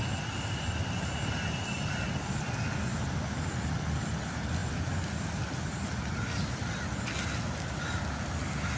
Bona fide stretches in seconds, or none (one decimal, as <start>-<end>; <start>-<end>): 0.0-8.8